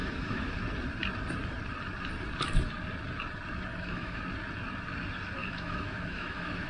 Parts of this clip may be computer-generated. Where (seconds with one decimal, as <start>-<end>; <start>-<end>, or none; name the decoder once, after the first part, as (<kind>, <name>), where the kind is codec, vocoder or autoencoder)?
0.0-0.5 (autoencoder, DAC-VAE); 3.7-4.2; 5.4-6.7